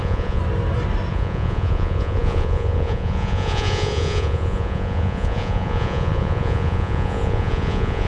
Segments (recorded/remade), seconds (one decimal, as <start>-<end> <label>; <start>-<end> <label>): 0.0-0.4 remade; 0.4-1.1 recorded; 1.1-8.1 remade